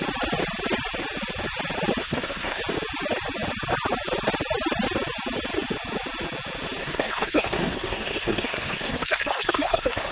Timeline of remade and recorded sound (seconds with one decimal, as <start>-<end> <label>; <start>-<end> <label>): 0.0-2.0 recorded; 2.0-2.6 remade; 2.6-6.8 recorded; 6.8-10.1 remade